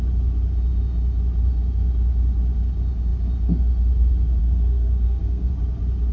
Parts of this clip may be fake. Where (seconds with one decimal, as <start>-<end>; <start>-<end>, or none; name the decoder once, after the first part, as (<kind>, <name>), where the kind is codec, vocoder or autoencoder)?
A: 4.4-5.5 (codec, SNAC)